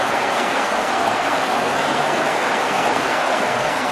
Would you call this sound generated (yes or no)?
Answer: yes